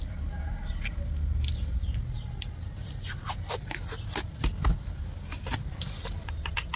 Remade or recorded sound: recorded